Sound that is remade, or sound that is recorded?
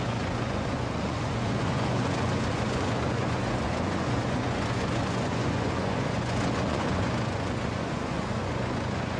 remade